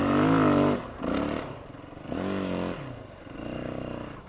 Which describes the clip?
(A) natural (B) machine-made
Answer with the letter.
A